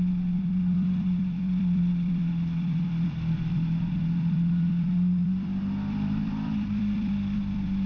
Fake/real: fake